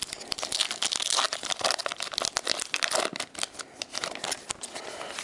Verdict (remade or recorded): recorded